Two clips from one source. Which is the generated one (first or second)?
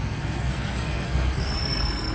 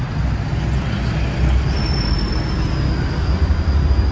first